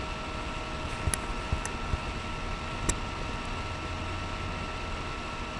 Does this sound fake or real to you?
real